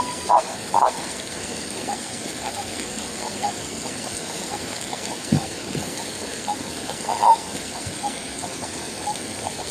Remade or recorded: remade